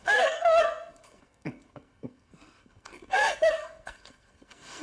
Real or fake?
fake